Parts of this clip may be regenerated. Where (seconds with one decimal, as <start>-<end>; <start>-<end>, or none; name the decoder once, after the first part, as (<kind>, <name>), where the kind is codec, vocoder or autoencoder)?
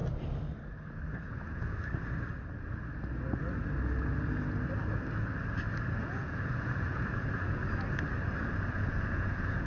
1.3-1.8 (vocoder, Vocos); 6.0-7.6; 8.7-9.7